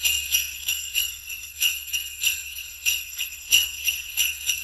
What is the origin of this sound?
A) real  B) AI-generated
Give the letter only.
B